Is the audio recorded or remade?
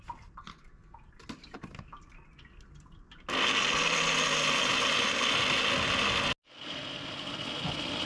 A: recorded